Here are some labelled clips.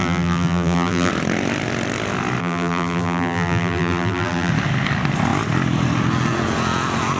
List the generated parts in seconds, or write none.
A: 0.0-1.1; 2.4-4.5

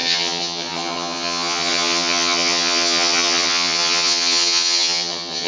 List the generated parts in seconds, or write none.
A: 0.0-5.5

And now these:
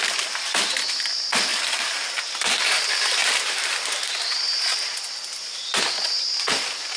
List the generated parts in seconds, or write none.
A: none